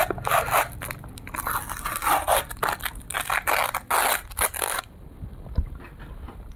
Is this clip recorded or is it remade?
recorded